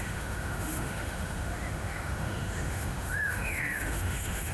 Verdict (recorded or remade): remade